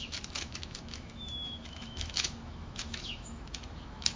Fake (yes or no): yes